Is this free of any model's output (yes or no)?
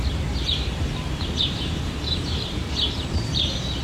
no